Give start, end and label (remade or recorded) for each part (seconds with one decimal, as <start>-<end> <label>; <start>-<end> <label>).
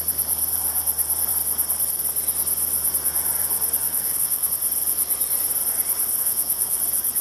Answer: 0.0-3.9 recorded; 3.9-4.5 remade; 4.5-6.2 recorded; 6.2-6.8 remade; 6.8-7.2 recorded